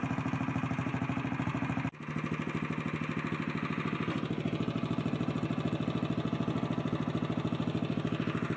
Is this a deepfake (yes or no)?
no